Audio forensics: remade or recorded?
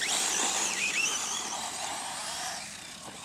remade